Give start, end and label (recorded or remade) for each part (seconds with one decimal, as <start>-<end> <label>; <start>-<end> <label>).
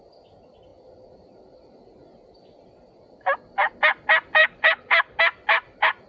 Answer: 0.0-4.4 recorded; 4.4-5.2 remade; 5.2-6.1 recorded